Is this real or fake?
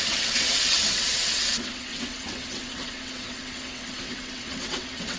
fake